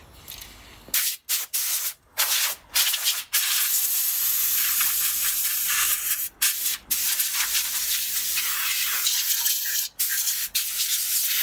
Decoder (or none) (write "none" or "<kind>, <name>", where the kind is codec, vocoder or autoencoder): none